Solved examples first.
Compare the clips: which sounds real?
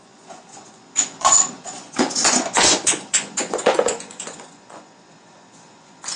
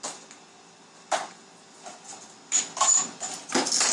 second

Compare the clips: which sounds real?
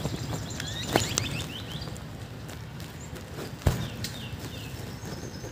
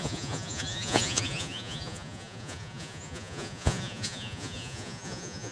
first